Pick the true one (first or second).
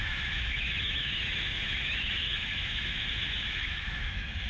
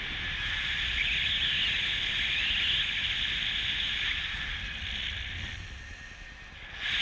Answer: second